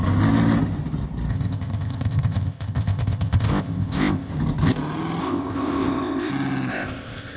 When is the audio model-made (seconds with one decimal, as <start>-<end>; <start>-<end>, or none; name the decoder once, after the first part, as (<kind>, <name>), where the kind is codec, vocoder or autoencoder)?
1.3-4.3 (codec, ZipCodec); 5.2-6.3; 6.7-7.4